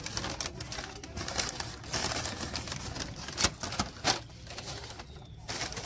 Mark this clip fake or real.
real